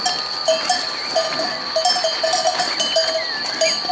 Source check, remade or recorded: recorded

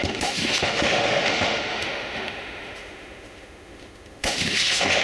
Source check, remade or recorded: remade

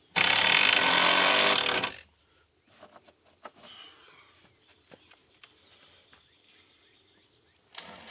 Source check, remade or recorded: recorded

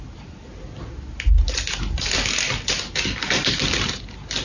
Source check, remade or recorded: recorded